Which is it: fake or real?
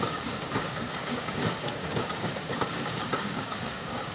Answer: fake